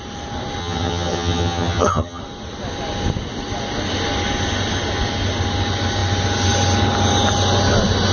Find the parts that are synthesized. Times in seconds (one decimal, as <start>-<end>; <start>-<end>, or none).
0.6-2.2